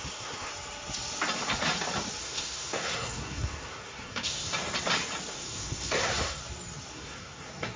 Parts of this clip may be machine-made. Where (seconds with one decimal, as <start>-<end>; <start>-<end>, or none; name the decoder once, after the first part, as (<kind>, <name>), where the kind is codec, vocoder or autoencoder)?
0.0-0.5 (codec, SNAC); 2.2-4.5; 5.3-6.4; 6.9-7.8